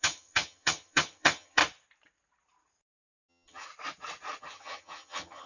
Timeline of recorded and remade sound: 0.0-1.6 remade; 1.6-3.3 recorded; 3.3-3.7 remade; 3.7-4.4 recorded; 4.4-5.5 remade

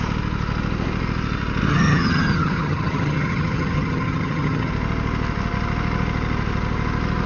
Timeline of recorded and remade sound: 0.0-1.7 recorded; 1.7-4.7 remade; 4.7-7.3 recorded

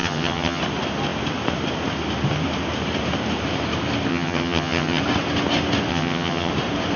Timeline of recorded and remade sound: 0.0-0.6 remade; 0.6-4.1 recorded; 4.1-5.0 remade; 5.0-5.9 recorded; 5.9-6.5 remade; 6.5-7.0 recorded

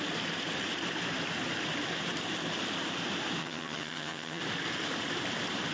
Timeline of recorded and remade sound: 0.0-3.4 recorded; 3.4-4.4 remade; 4.4-5.7 recorded

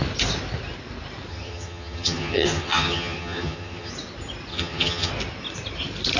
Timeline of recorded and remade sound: 0.0-1.3 recorded; 1.3-3.9 remade; 3.9-4.5 recorded; 4.5-5.1 remade; 5.1-6.2 recorded

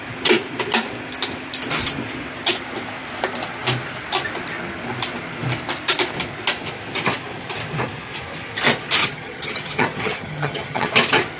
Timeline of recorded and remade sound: 0.0-9.0 recorded; 9.0-10.9 remade; 10.9-11.4 recorded

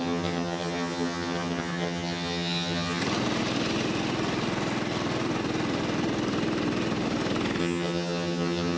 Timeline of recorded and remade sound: 0.0-3.0 remade; 3.0-7.6 recorded; 7.6-8.8 remade

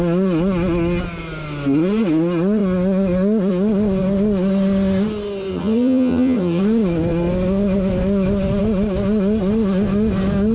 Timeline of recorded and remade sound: 0.0-5.5 recorded; 5.5-6.6 remade; 6.6-10.5 recorded